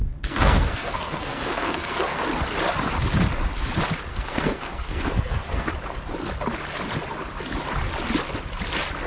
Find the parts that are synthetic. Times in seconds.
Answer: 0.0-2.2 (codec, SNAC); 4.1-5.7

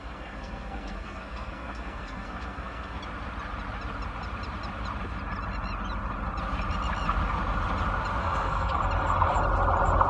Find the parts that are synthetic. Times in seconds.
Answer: 0.0-3.0 (codec, SNAC); 8.2-8.8

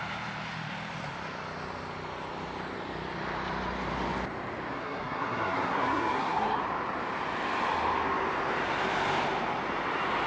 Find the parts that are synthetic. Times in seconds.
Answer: 4.7-6.6 (codec, SNAC)

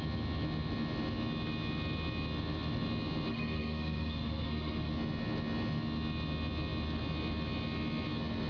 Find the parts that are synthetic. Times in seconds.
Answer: 3.3-4.9 (codec, SNAC)

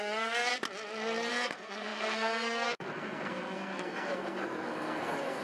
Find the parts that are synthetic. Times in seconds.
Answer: 0.0-0.5 (codec, SNAC); 1.3-5.4

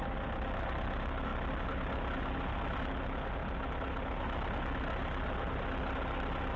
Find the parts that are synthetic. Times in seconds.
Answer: none